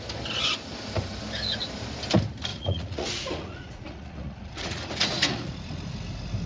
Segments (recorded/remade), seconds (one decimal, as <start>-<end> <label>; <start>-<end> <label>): 0.0-2.5 recorded; 2.5-5.5 remade; 5.5-6.5 recorded